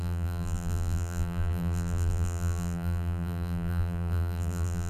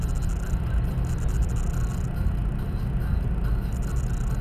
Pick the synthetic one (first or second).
first